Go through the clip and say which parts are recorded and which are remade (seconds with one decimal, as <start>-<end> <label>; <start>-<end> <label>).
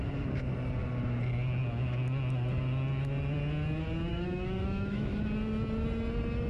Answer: 0.0-4.1 recorded; 4.1-5.2 remade; 5.2-6.5 recorded